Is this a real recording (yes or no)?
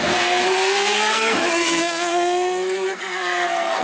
no